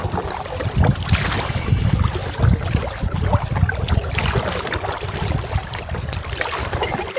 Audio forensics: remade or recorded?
recorded